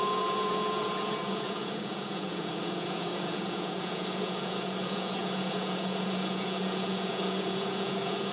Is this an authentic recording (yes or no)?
no